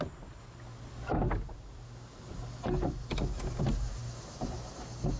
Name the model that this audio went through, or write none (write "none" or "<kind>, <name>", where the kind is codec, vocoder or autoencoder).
none